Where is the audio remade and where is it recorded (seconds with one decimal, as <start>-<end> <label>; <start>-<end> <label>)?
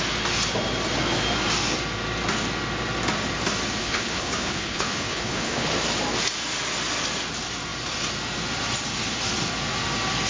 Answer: 0.0-3.8 recorded; 3.8-5.7 remade; 5.7-10.3 recorded